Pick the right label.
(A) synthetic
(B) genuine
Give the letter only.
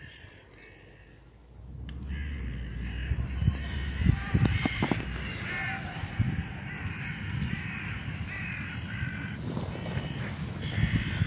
B